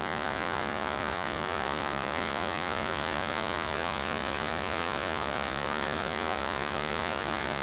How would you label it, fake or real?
fake